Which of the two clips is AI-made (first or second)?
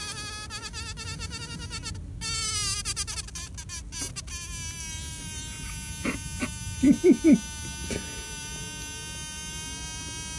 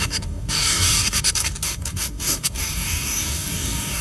second